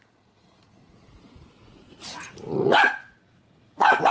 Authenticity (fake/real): fake